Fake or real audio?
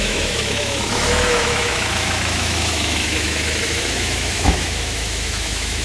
fake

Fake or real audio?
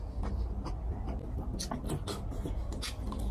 real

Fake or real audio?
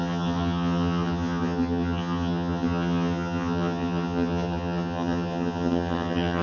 fake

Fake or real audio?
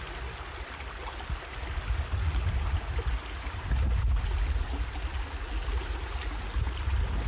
real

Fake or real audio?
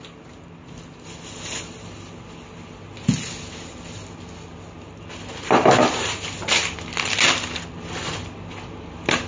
real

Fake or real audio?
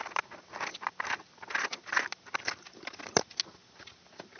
real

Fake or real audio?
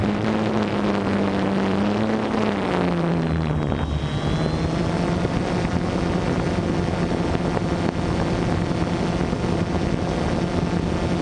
real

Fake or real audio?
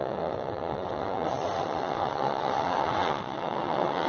fake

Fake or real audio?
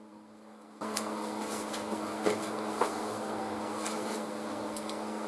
fake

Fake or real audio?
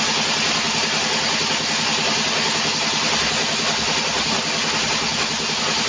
real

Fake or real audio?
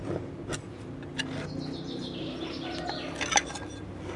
real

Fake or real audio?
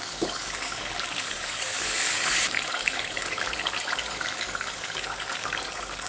fake